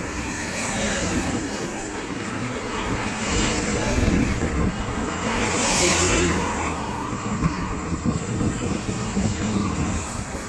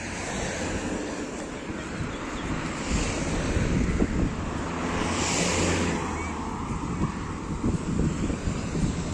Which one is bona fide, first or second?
second